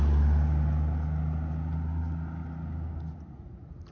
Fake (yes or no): no